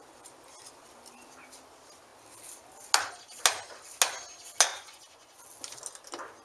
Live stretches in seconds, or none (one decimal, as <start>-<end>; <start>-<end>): 0.0-4.7; 5.4-6.4